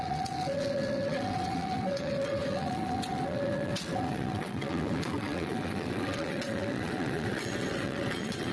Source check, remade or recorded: remade